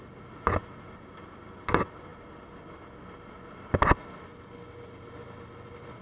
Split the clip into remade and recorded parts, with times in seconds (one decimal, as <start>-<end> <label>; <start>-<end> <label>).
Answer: 0.0-6.0 recorded